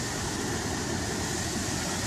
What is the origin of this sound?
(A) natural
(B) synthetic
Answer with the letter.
A